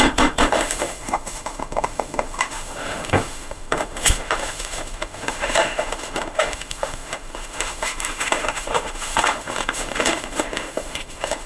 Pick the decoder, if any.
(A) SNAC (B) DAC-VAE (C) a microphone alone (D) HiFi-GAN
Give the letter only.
B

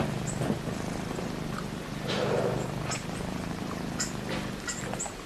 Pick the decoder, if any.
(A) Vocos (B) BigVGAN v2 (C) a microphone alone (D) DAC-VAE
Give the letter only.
C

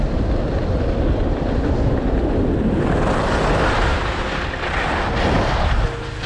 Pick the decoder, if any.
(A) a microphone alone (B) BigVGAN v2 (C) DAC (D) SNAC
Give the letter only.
A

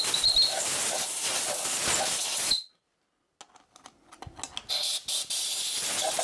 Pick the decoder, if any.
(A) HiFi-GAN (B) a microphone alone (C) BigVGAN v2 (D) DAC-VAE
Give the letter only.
B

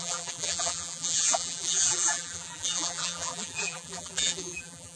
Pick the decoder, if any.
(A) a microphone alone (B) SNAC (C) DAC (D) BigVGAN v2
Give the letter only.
D